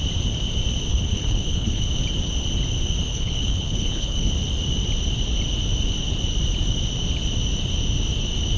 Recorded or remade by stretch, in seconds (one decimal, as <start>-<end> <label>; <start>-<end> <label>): 0.0-0.9 recorded; 0.9-1.9 remade; 1.9-3.1 recorded; 3.1-4.3 remade; 4.3-8.6 recorded